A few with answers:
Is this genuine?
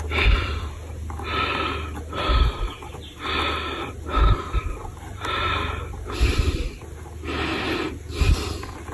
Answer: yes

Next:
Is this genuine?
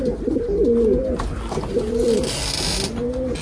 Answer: yes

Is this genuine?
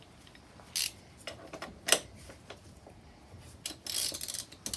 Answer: yes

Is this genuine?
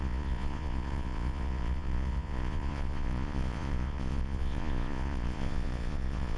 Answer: no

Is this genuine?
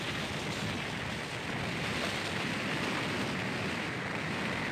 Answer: yes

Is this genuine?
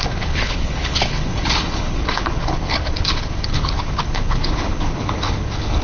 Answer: no